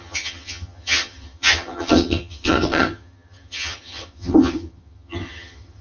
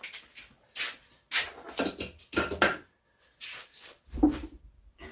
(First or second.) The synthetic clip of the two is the first